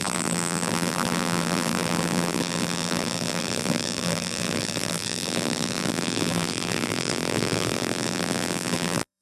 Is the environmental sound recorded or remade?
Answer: remade